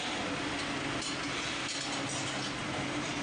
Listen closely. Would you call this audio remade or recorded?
recorded